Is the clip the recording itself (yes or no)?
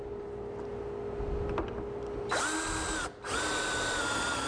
yes